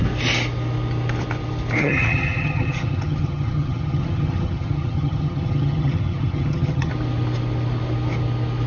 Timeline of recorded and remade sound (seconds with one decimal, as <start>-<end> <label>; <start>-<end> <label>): 0.0-1.8 recorded; 1.8-6.9 remade; 6.9-8.7 recorded